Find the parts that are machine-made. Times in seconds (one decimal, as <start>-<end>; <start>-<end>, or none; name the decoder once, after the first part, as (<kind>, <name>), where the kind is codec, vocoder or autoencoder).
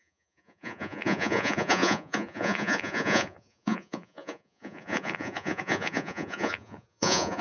0.0-7.4 (vocoder, Vocos)